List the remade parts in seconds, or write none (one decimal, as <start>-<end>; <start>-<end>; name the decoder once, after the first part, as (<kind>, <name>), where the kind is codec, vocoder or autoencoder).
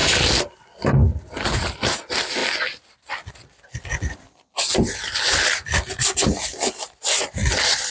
none